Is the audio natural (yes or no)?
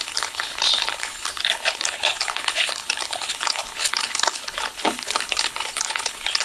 no